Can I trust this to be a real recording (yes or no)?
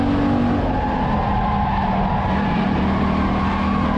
yes